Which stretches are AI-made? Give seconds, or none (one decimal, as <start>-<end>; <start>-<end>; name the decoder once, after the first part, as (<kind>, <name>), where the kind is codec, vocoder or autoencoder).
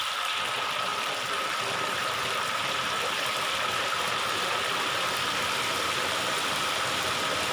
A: 0.9-4.8 (vocoder, BigVGAN v2)